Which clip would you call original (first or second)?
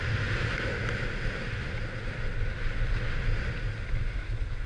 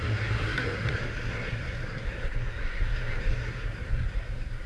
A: first